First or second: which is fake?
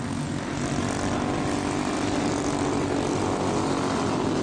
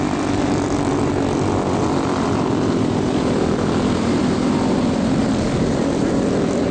second